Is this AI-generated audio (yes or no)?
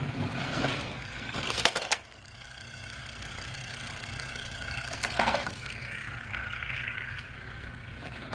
yes